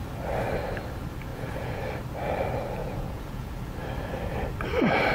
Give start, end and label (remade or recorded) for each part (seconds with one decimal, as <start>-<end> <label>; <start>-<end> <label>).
0.0-1.3 recorded; 1.3-1.8 remade; 1.8-2.8 recorded; 2.8-3.5 remade; 3.5-5.1 recorded